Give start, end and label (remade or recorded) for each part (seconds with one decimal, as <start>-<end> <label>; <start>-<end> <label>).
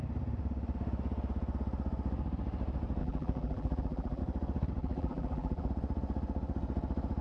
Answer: 0.0-3.0 recorded; 3.0-4.2 remade; 4.2-4.8 recorded; 4.8-5.7 remade; 5.7-7.2 recorded